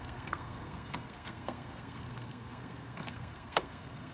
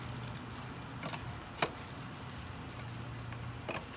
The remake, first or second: first